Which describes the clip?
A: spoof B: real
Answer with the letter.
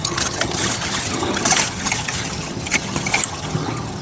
A